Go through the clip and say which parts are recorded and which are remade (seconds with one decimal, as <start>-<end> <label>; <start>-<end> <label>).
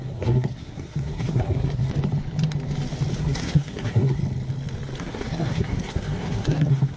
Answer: 0.0-1.8 remade; 1.8-3.2 recorded; 3.2-4.2 remade; 4.2-5.0 recorded; 5.0-7.0 remade